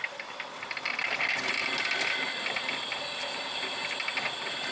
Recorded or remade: recorded